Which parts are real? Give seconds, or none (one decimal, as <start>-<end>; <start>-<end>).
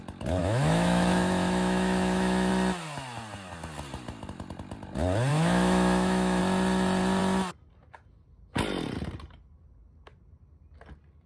0.0-0.4; 2.5-5.3; 6.4-11.3